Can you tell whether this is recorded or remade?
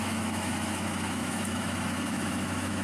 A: remade